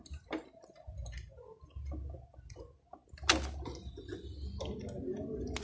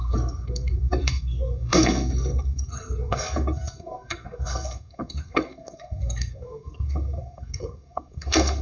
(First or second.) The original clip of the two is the first